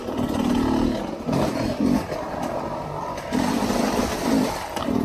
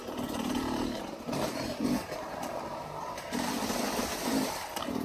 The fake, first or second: second